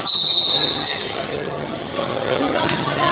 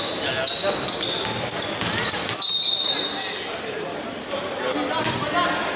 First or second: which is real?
second